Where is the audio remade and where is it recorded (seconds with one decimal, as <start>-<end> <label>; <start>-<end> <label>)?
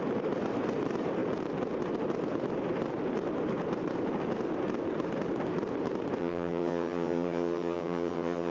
0.0-6.2 recorded; 6.2-8.5 remade